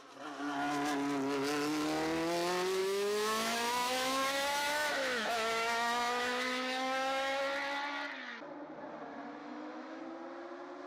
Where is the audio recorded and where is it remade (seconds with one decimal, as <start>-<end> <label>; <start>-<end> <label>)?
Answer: 0.0-2.8 recorded; 2.8-7.4 remade; 7.4-9.4 recorded; 9.4-10.0 remade; 10.0-10.9 recorded